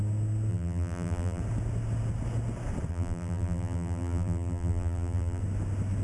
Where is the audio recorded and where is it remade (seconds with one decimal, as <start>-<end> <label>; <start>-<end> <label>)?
0.0-0.5 recorded; 0.5-1.4 remade; 1.4-2.9 recorded; 2.9-5.4 remade; 5.4-6.0 recorded